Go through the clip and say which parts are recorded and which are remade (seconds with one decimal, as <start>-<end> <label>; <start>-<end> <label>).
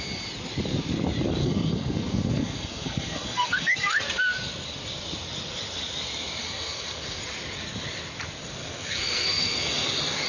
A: 0.0-1.4 recorded; 1.4-4.1 remade; 4.1-6.4 recorded; 6.4-7.2 remade; 7.2-8.6 recorded; 8.6-9.6 remade; 9.6-10.3 recorded